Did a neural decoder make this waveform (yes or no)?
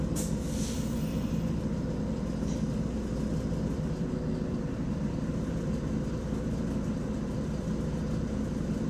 no